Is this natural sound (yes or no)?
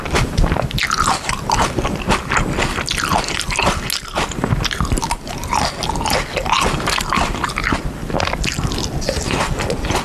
yes